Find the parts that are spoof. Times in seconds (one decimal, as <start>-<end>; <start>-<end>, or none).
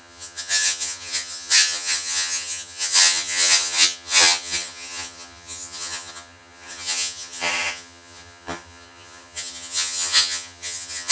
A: 0.0-11.1